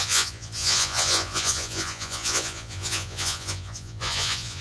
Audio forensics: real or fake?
fake